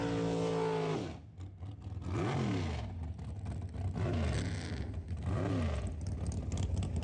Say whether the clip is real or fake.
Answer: real